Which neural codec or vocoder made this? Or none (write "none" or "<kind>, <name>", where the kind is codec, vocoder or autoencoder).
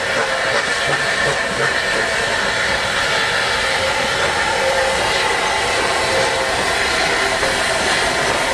none